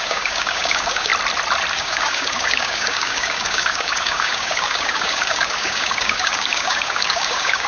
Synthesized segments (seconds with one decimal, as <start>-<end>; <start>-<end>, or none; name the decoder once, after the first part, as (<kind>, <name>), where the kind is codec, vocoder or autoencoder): 0.0-1.1 (codec, DAC); 1.7-7.7